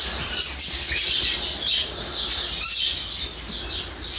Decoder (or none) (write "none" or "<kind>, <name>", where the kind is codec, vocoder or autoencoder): none